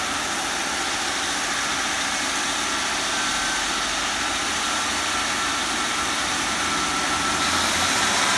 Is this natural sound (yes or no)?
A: no